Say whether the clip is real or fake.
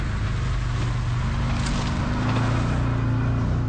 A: real